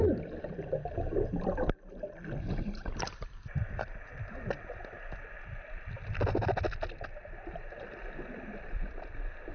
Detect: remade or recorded remade